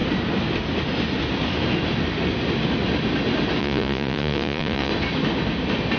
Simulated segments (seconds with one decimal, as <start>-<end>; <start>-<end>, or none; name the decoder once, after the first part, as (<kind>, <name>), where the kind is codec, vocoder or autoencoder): 3.6-4.9 (vocoder, Vocos)